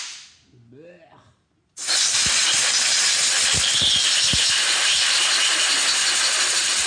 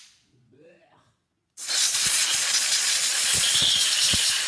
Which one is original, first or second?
first